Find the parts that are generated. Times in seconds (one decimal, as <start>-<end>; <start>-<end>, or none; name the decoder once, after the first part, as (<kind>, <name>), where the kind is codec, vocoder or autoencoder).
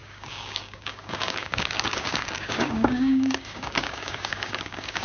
0.0-5.0 (codec, DAC)